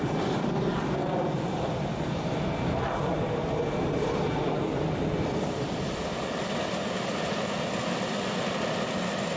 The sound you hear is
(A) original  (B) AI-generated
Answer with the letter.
A